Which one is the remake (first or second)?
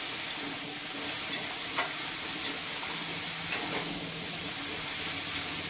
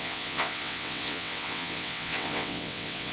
second